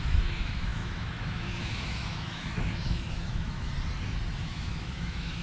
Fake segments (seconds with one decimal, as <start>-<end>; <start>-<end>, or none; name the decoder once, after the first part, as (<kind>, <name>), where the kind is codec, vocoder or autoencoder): 0.0-3.7 (autoencoder, DAC-VAE); 4.4-5.4